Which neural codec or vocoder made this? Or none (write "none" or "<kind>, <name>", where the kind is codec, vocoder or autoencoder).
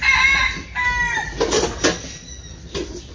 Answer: none